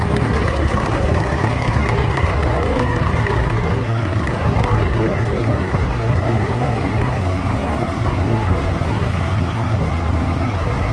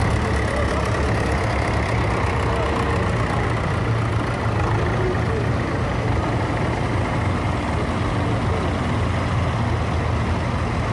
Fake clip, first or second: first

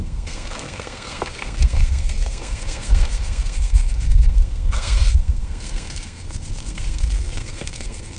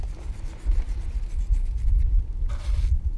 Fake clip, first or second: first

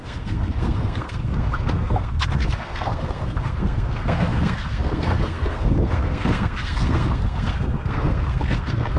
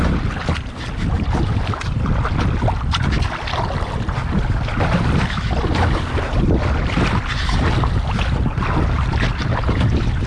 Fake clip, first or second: first